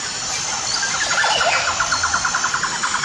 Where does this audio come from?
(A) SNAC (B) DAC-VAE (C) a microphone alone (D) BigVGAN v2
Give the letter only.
C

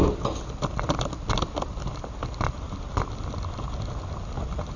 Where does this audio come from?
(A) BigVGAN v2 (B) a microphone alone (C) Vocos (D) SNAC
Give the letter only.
B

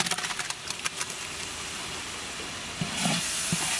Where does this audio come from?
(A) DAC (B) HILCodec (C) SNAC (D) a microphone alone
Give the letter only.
D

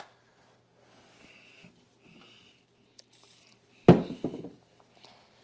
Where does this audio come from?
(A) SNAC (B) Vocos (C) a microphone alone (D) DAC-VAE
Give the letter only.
C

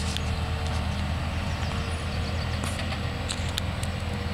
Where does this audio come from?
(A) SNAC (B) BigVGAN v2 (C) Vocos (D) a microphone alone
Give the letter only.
D